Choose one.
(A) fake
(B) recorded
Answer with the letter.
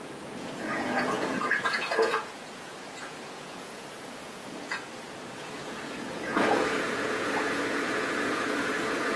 A